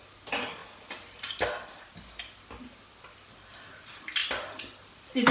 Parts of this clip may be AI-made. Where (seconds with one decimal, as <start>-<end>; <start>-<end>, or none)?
none